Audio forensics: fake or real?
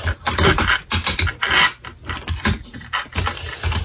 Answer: real